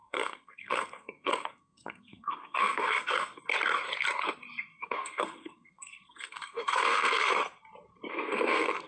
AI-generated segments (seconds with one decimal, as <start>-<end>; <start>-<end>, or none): 0.0-3.4; 4.7-7.3; 8.1-8.9